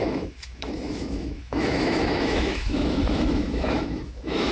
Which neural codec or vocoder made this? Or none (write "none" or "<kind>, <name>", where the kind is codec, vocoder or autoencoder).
autoencoder, DAC-VAE